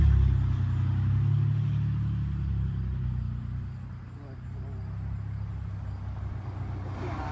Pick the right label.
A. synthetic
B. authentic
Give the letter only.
B